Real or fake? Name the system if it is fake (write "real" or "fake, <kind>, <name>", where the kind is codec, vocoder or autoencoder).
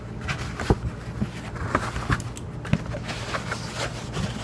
real